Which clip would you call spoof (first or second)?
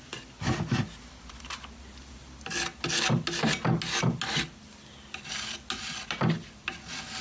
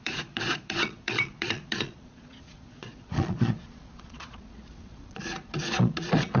second